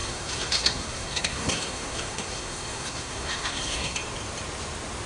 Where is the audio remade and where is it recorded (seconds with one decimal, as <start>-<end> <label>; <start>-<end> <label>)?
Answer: 0.0-4.0 remade; 4.0-5.1 recorded